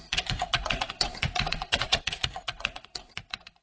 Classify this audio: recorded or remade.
remade